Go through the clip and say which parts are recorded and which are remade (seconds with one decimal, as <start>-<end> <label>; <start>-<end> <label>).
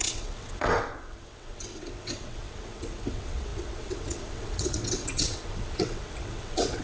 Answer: 0.0-6.8 remade